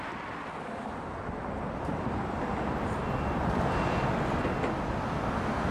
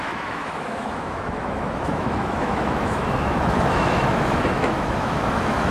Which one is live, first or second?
first